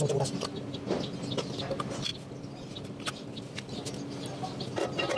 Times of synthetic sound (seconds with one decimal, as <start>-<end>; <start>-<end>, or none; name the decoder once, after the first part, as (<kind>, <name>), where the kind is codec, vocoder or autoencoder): none

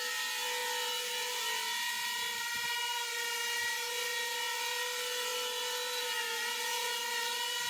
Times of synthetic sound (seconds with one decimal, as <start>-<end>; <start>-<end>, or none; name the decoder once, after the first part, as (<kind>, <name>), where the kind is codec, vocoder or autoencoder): none

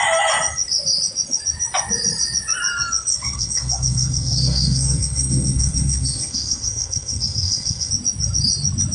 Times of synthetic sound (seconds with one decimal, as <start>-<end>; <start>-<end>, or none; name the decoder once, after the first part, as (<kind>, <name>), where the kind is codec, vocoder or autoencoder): 3.1-7.9 (codec, SNAC)

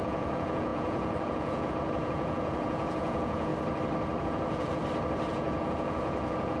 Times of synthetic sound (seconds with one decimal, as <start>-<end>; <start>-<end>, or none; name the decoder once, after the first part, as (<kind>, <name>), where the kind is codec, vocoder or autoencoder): 0.0-3.5 (vocoder, Vocos); 4.2-4.8; 5.3-6.6

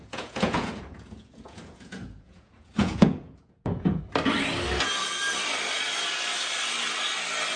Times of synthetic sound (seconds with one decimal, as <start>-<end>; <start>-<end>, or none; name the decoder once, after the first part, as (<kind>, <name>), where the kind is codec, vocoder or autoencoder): 0.0-4.0 (vocoder, Vocos)

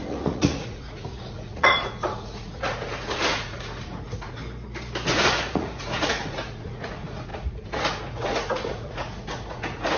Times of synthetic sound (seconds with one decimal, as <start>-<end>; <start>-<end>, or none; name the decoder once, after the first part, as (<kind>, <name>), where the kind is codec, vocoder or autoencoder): 0.0-4.4 (vocoder, Vocos); 5.1-10.0

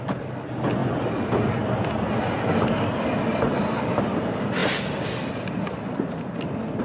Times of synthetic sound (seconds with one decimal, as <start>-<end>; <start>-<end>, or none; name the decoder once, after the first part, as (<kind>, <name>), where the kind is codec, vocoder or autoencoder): none

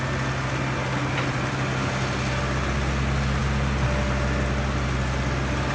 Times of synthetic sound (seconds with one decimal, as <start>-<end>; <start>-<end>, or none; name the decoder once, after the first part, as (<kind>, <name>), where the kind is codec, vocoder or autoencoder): none